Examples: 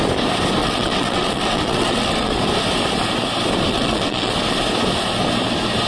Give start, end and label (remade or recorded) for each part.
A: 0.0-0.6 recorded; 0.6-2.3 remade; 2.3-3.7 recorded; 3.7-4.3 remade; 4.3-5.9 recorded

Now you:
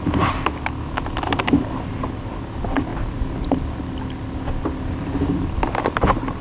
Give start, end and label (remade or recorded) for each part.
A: 0.0-6.4 recorded

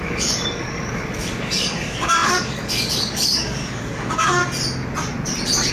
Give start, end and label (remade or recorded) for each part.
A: 0.0-4.4 remade; 4.4-5.7 recorded

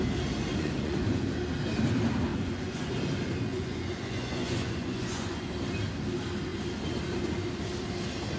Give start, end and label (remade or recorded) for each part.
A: 0.0-0.5 recorded; 0.5-1.3 remade; 1.3-2.3 recorded; 2.3-2.9 remade; 2.9-3.5 recorded; 3.5-5.5 remade; 5.5-8.4 recorded

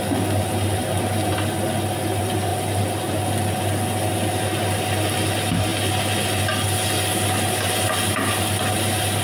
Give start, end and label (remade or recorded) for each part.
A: 0.0-2.5 recorded; 2.5-3.0 remade; 3.0-5.7 recorded; 5.7-6.4 remade; 6.4-9.2 recorded

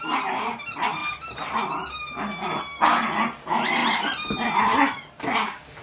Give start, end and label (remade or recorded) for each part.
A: 0.0-5.8 recorded